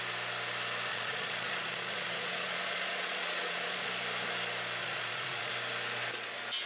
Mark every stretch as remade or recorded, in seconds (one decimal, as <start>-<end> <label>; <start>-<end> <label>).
0.0-0.9 recorded; 0.9-3.9 remade; 3.9-4.8 recorded; 4.8-5.5 remade; 5.5-6.7 recorded